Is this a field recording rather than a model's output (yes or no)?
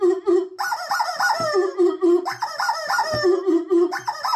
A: yes